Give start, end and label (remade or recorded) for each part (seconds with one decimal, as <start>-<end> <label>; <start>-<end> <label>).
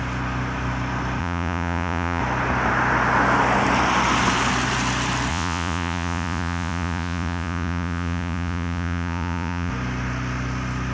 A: 0.0-1.2 recorded; 1.2-2.2 remade; 2.2-5.3 recorded; 5.3-9.7 remade; 9.7-10.9 recorded